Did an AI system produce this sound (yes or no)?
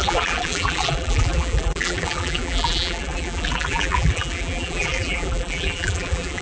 yes